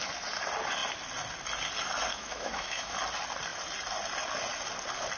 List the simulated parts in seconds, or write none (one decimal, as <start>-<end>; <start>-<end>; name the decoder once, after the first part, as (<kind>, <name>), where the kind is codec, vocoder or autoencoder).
2.1-2.9 (autoencoder, DAC-VAE)